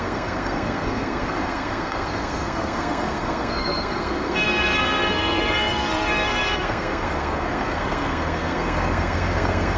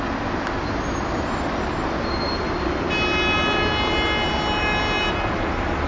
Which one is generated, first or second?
first